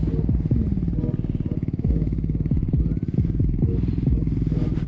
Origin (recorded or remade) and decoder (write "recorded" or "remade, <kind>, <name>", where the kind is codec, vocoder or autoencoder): recorded